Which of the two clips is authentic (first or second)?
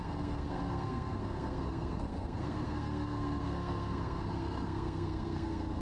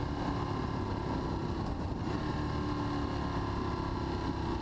second